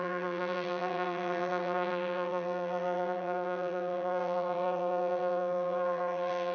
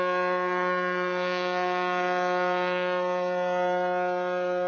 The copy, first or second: first